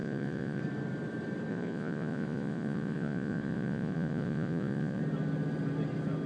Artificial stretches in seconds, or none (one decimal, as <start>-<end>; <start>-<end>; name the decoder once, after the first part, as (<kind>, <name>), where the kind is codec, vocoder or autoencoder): 0.0-0.6 (vocoder, Vocos); 1.5-5.0